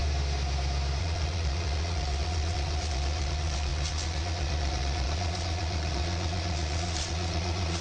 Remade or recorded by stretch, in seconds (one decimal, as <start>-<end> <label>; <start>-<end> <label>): 0.0-1.0 recorded; 1.0-7.8 remade